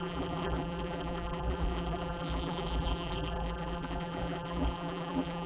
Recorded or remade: remade